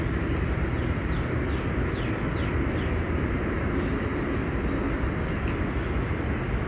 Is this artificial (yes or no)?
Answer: no